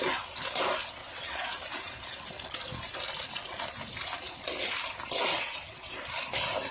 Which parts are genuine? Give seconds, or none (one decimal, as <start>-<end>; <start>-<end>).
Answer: 0.0-1.0; 1.6-5.3; 5.9-6.7